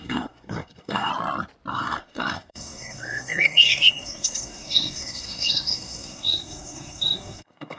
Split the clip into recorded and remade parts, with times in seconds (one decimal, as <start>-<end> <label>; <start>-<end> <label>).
0.0-1.1 remade; 1.1-1.7 recorded; 1.7-7.8 remade